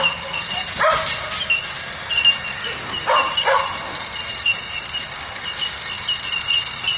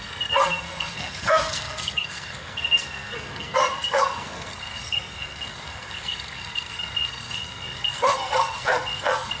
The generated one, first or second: second